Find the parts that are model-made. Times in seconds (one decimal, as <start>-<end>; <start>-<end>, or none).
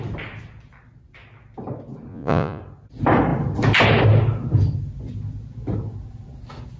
2.1-2.6